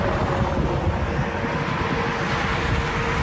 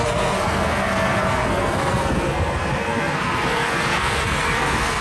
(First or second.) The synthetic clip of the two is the second